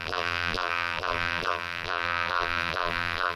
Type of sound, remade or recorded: remade